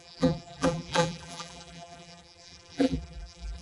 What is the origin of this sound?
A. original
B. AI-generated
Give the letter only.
B